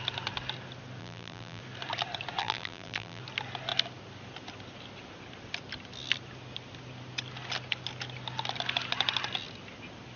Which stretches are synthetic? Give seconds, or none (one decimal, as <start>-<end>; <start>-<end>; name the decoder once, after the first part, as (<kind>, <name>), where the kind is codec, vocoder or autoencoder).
1.0-1.6 (vocoder, BigVGAN v2); 2.4-3.2